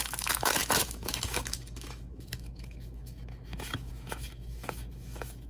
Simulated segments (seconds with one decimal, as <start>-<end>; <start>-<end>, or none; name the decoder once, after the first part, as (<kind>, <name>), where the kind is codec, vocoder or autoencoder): 0.0-5.5 (autoencoder, DAC-VAE)